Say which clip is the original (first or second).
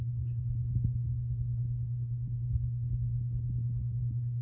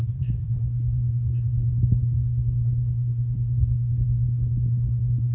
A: first